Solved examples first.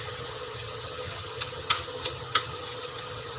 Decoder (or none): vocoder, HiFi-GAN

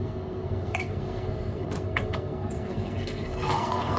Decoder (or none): codec, SNAC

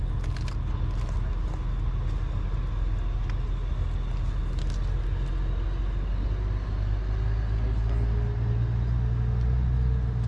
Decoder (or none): none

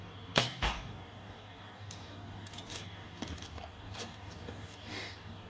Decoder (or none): codec, DAC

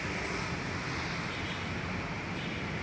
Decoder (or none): none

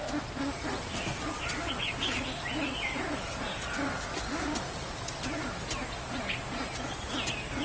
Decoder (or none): none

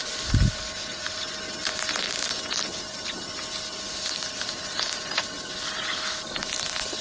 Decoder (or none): none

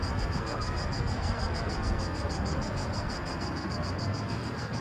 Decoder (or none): codec, SNAC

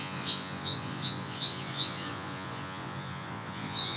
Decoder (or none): vocoder, Vocos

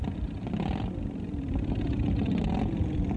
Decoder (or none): vocoder, BigVGAN v2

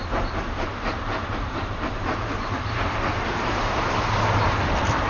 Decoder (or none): vocoder, BigVGAN v2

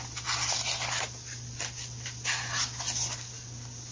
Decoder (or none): none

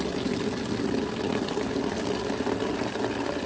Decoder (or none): none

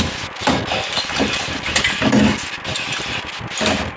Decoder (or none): none